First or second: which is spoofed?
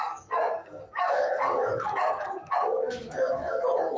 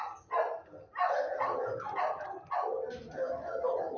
first